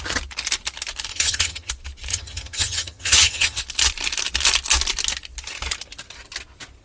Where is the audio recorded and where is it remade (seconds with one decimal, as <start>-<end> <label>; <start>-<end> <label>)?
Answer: 0.0-1.1 recorded; 1.1-1.7 remade; 1.7-2.1 recorded; 2.1-3.6 remade; 3.6-6.8 recorded

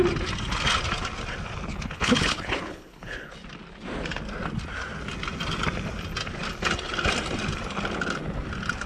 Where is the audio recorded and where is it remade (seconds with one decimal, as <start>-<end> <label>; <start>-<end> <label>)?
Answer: 0.0-1.7 recorded; 1.7-3.3 remade; 3.3-8.9 recorded

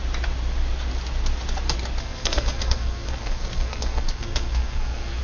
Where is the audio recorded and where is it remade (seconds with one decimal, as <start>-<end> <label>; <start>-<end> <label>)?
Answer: 0.0-2.0 recorded; 2.0-5.2 remade

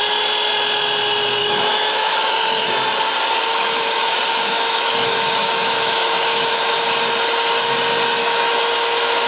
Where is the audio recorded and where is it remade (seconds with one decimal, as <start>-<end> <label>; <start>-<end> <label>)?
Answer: 0.0-1.4 recorded; 1.4-2.7 remade; 2.7-3.5 recorded; 3.5-6.8 remade; 6.8-8.2 recorded; 8.2-8.7 remade; 8.7-9.3 recorded

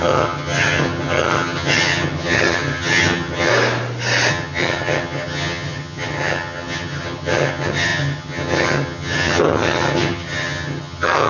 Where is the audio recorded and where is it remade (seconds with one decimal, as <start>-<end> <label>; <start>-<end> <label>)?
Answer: 0.0-3.5 remade; 3.5-4.3 recorded; 4.3-11.3 remade

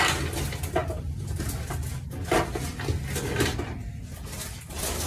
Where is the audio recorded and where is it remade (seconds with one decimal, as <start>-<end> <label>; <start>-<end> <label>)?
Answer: 0.0-5.1 recorded